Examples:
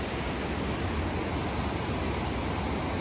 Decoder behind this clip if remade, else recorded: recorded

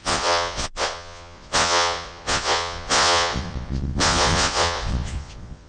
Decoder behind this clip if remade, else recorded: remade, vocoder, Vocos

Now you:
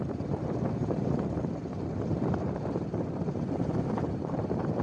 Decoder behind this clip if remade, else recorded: remade, vocoder, BigVGAN v2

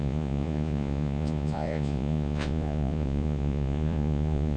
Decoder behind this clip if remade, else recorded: remade, vocoder, Vocos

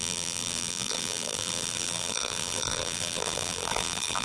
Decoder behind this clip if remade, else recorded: remade, vocoder, BigVGAN v2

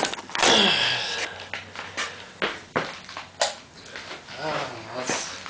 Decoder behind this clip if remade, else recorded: recorded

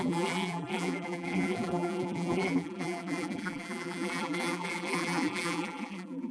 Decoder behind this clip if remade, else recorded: remade, vocoder, BigVGAN v2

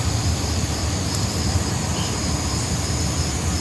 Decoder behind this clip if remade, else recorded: recorded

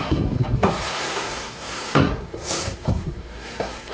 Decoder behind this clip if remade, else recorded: remade, codec, SNAC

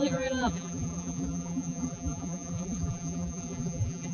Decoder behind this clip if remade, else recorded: remade, vocoder, BigVGAN v2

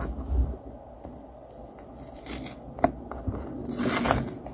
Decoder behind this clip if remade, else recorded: recorded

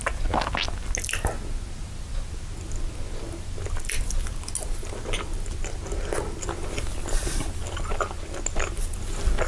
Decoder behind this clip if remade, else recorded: recorded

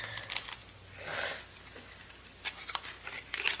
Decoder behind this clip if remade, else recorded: recorded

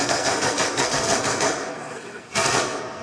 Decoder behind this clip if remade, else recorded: remade, codec, SNAC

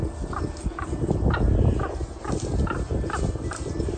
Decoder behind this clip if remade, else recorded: recorded